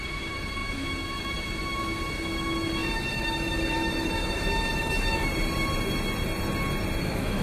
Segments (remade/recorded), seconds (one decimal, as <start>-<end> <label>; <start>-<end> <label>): 0.0-5.3 remade; 5.3-7.0 recorded; 7.0-7.4 remade